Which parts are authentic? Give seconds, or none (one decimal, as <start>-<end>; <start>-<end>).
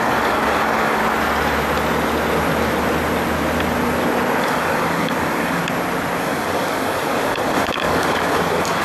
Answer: 1.0-4.4; 5.6-6.2